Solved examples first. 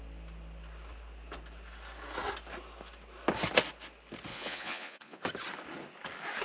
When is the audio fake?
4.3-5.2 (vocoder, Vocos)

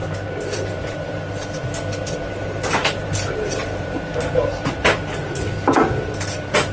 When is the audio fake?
0.0-1.3 (vocoder, BigVGAN v2); 2.8-5.3

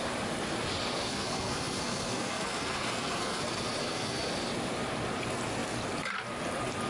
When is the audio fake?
1.1-3.4 (codec, SNAC); 3.8-4.3

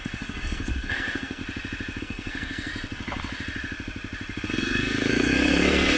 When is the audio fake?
0.0-1.4 (codec, SNAC); 2.0-2.7; 4.5-6.0

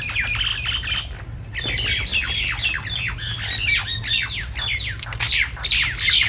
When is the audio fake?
none

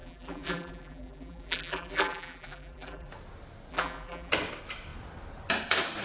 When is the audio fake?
0.0-3.1 (vocoder, BigVGAN v2); 3.7-4.3

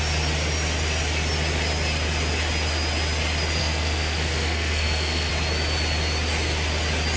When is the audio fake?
3.6-5.3 (codec, SNAC)